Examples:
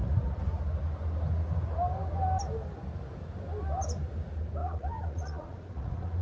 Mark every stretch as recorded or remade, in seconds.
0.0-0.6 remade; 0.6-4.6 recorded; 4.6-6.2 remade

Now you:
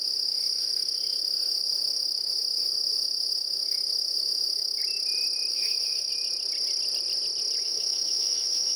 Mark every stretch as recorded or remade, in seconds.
0.0-4.8 remade; 4.8-5.5 recorded; 5.5-6.1 remade; 6.1-7.6 recorded; 7.6-8.8 remade

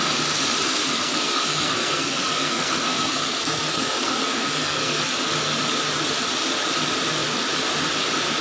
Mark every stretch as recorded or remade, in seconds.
0.0-0.8 recorded; 0.8-5.0 remade; 5.0-8.4 recorded